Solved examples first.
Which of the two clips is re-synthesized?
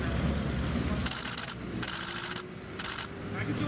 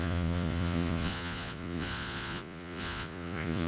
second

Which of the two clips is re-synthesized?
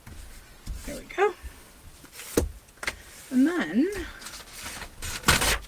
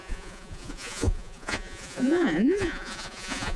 second